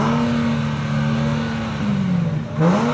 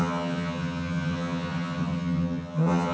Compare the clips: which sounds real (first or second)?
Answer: first